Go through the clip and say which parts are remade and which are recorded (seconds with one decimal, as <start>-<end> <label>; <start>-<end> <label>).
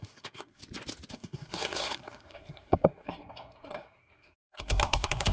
0.0-0.6 remade; 0.6-1.1 recorded; 1.1-5.3 remade